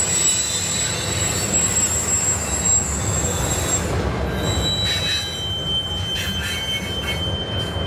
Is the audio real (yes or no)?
yes